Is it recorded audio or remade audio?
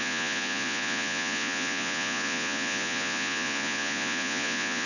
remade